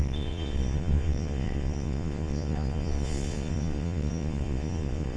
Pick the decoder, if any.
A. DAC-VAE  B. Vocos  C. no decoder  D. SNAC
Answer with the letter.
B